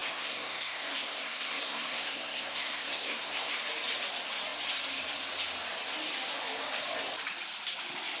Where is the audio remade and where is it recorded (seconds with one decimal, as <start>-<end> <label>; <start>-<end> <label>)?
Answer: 0.0-3.6 remade; 3.6-8.2 recorded